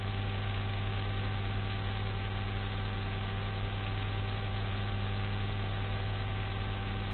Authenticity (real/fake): fake